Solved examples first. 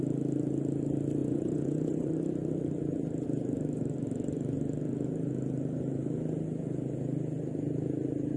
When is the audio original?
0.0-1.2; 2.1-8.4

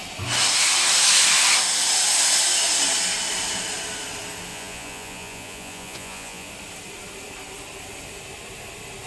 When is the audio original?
0.0-4.5; 6.5-9.1

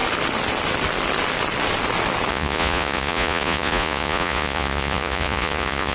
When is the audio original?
0.0-2.3

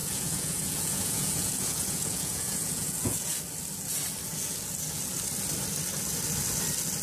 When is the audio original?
3.4-7.0